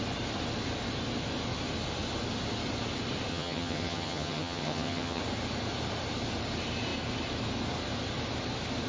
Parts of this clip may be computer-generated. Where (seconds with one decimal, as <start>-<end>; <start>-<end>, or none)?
3.3-5.2